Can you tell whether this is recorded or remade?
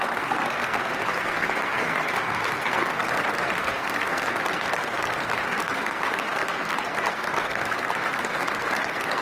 remade